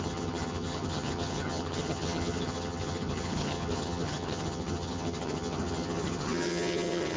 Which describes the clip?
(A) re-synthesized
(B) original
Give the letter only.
A